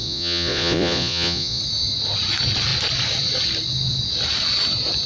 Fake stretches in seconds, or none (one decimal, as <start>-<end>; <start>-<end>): 0.0-1.6